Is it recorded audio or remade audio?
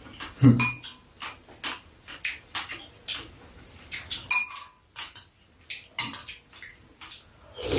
recorded